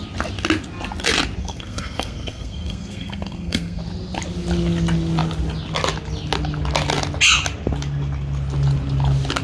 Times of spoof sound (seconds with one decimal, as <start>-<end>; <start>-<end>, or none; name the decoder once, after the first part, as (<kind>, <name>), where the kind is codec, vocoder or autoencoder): 1.4-3.8 (codec, SNAC)